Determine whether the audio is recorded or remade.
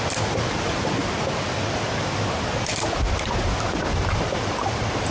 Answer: recorded